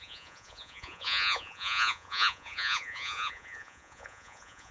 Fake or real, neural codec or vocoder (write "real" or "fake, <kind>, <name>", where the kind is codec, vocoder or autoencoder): fake, vocoder, Vocos